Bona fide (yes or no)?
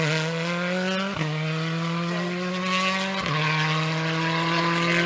yes